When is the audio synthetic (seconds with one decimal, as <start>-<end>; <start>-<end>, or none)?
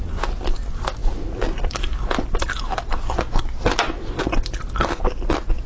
none